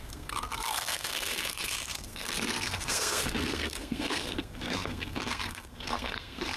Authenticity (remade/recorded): remade